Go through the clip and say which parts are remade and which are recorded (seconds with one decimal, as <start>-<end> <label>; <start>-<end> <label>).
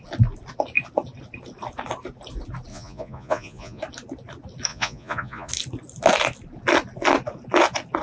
0.0-2.7 recorded; 2.7-3.8 remade; 3.8-4.7 recorded; 4.7-5.5 remade; 5.5-8.0 recorded